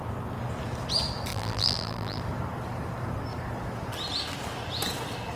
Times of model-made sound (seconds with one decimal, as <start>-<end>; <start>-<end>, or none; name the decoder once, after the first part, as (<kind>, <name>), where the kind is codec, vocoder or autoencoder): 1.3-2.2 (vocoder, BigVGAN v2)